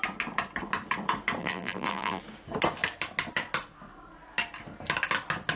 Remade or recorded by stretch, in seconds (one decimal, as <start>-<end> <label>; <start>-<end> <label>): 0.0-1.4 recorded; 1.4-2.2 remade; 2.2-5.6 recorded